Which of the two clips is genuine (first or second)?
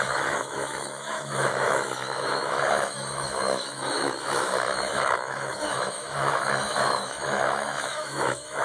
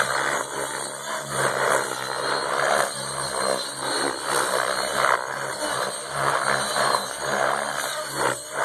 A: second